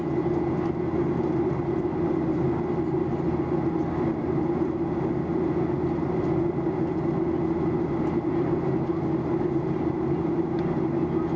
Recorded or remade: recorded